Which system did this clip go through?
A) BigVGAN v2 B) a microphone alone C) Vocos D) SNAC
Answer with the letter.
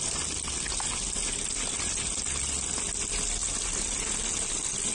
B